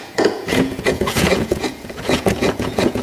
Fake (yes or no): yes